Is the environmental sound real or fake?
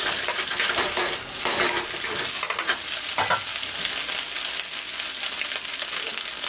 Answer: real